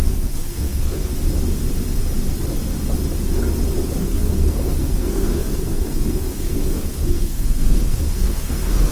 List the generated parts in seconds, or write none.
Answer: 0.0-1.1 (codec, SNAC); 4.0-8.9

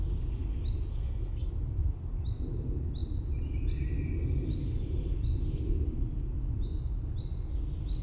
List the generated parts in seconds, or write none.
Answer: 0.9-1.5 (codec, SNAC)